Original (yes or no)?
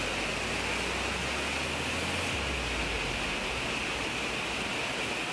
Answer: yes